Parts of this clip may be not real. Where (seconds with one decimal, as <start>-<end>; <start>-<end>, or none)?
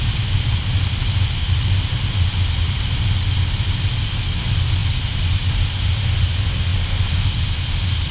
none